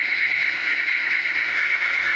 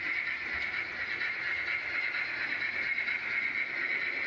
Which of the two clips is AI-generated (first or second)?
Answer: first